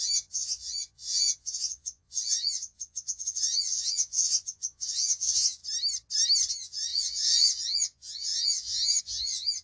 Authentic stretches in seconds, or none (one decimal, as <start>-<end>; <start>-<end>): 5.6-6.5